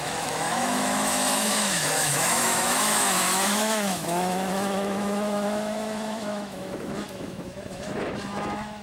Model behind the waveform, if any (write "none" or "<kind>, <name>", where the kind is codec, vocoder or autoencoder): autoencoder, DAC-VAE